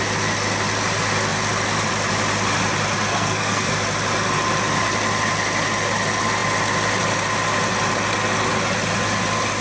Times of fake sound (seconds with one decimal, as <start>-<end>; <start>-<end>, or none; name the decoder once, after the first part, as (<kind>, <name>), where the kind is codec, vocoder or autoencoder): 3.1-3.7 (codec, SNAC)